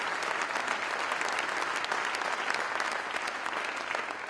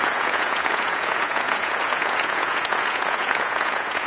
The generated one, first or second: second